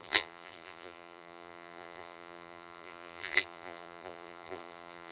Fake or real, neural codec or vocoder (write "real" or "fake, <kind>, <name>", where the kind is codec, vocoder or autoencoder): fake, vocoder, BigVGAN v2